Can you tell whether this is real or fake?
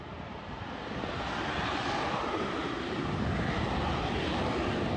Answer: real